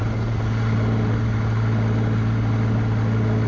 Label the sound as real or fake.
real